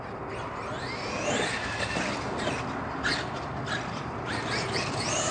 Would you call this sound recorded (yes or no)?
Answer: yes